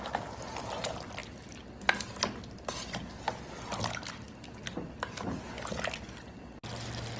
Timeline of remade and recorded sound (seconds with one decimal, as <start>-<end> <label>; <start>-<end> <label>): 0.0-7.2 recorded